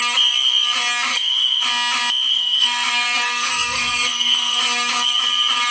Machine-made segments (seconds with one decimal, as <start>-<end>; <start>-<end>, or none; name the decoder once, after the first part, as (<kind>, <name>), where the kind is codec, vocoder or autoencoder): 1.1-1.6 (codec, SNAC); 2.3-4.6